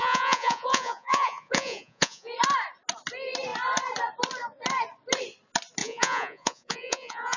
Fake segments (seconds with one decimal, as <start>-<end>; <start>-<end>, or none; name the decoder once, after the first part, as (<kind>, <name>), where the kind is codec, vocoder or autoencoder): 0.0-2.3 (vocoder, Vocos); 5.8-7.4